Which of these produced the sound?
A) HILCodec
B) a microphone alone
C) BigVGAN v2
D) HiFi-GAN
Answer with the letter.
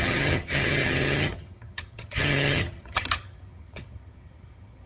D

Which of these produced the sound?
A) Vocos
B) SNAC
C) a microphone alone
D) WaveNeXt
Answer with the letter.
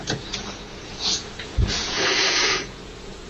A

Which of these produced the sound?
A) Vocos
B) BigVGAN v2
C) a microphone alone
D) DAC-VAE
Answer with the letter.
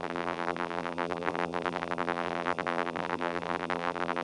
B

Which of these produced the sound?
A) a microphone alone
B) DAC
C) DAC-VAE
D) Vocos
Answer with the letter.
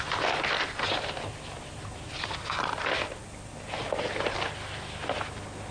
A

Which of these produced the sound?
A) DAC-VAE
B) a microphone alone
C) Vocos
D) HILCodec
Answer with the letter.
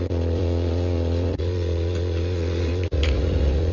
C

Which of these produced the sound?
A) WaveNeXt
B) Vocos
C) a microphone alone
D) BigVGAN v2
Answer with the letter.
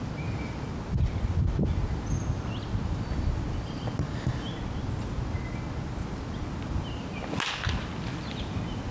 C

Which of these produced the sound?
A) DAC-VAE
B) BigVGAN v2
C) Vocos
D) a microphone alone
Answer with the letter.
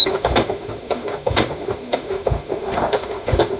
A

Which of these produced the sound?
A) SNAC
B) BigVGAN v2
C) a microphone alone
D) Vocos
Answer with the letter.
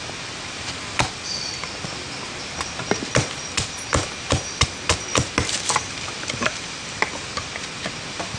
C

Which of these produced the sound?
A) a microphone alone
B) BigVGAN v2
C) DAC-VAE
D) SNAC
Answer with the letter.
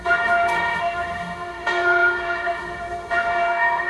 C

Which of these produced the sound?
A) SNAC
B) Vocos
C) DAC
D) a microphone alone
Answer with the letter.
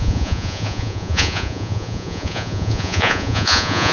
B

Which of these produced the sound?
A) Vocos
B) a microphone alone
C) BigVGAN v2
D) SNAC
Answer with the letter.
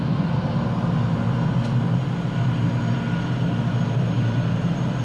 B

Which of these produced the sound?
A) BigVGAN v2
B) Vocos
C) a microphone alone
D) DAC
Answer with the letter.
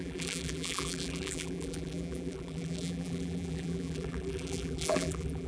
A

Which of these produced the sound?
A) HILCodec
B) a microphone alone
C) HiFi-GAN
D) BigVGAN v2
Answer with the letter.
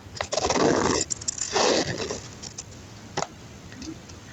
B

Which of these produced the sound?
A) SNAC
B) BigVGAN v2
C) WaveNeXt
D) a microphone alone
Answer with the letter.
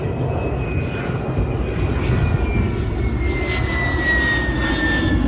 D